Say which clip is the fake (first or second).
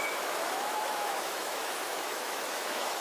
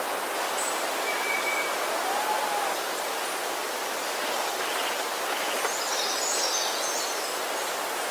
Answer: first